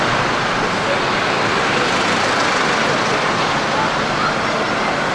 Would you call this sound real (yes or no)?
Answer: yes